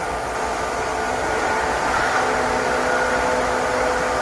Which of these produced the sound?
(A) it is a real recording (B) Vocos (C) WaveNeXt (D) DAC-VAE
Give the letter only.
A